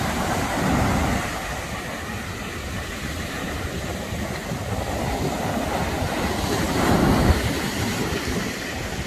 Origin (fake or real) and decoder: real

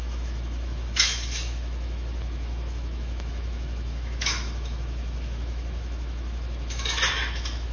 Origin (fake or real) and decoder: fake, autoencoder, DAC-VAE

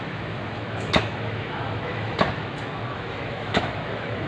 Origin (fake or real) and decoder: fake, autoencoder, DAC-VAE